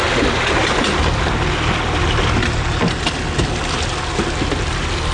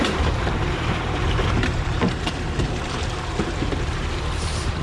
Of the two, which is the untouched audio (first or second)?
first